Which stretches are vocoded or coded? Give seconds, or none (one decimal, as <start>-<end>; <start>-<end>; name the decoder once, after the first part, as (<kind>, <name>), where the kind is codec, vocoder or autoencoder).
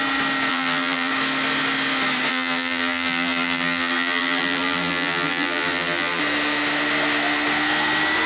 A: 0.5-1.1 (vocoder, BigVGAN v2); 2.3-6.2